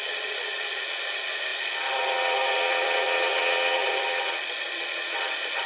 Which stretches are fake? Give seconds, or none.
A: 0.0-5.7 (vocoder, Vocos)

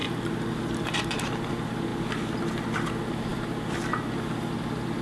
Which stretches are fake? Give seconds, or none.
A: none

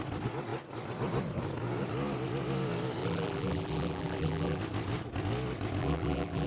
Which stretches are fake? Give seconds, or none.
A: 3.0-4.6 (vocoder, BigVGAN v2); 5.8-6.5